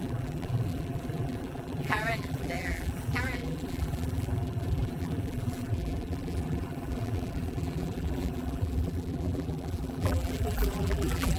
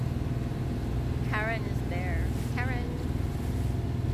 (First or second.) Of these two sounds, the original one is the second